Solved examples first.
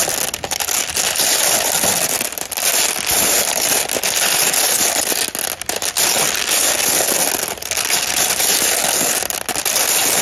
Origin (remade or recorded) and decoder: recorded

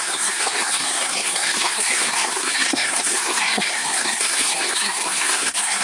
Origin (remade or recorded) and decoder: remade, codec, SNAC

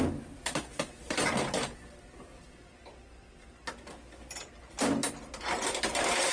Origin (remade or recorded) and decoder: recorded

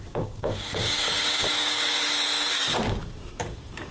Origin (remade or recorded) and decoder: remade, codec, DAC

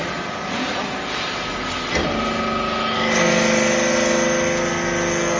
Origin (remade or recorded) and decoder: recorded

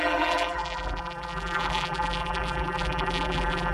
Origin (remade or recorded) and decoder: remade, vocoder, BigVGAN v2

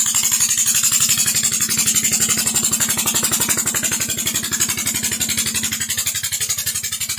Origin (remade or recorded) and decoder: recorded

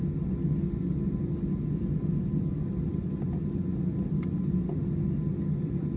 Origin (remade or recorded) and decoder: recorded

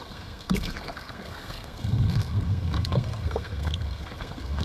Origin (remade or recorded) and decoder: remade, codec, SNAC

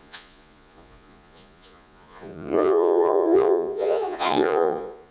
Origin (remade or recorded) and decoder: remade, vocoder, Vocos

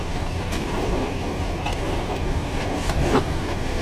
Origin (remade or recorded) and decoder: remade, codec, DAC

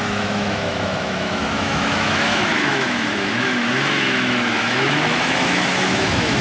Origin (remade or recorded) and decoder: remade, autoencoder, DAC-VAE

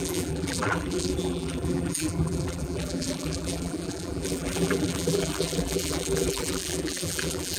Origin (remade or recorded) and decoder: remade, vocoder, BigVGAN v2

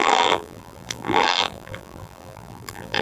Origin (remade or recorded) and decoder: remade, vocoder, BigVGAN v2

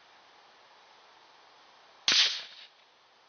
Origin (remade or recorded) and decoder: recorded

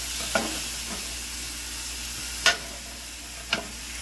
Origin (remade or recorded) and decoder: recorded